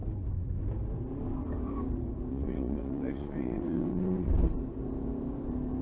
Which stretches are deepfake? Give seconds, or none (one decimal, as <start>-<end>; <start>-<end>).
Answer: 2.3-4.3